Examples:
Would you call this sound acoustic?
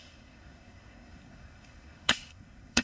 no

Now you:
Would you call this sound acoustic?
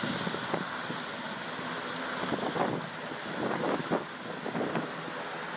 yes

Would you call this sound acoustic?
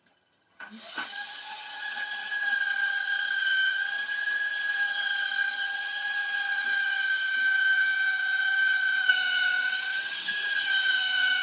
no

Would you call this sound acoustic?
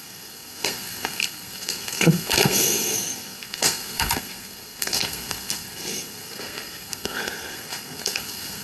no